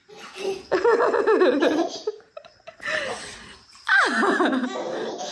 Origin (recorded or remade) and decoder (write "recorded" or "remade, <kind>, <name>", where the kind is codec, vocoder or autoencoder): recorded